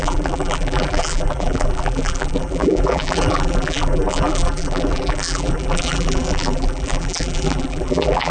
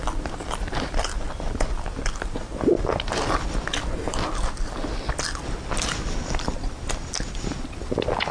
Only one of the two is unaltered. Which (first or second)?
second